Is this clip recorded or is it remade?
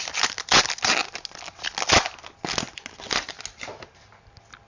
recorded